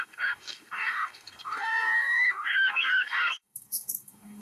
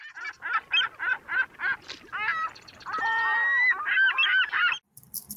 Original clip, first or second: second